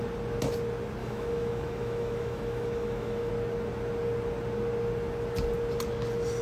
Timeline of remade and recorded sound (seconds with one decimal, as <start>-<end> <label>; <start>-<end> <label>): 0.0-1.0 recorded; 1.0-3.3 remade; 3.3-6.4 recorded